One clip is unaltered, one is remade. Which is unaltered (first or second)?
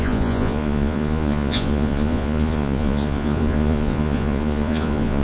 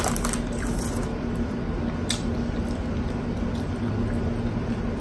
second